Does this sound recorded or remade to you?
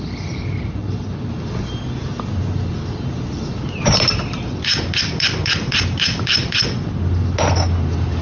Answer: recorded